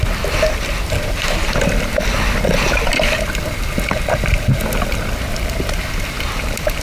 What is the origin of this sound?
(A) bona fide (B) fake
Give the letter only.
A